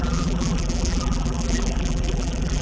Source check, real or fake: fake